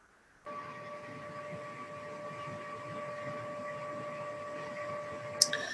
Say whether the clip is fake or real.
real